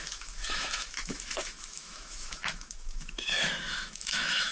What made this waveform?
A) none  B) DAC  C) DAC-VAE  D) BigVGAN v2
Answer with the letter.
C